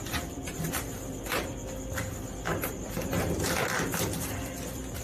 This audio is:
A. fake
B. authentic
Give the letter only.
A